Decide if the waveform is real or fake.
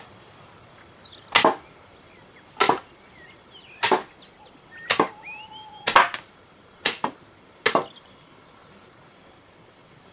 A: real